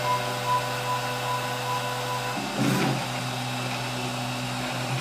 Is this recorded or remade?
recorded